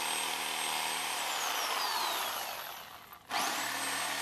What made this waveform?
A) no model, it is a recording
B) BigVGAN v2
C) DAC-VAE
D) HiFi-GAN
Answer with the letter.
A